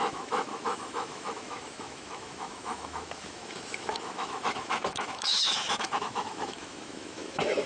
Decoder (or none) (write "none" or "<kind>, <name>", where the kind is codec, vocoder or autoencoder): autoencoder, DAC-VAE